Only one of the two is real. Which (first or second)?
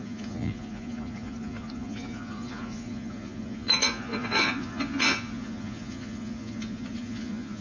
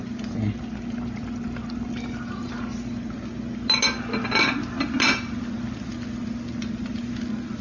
second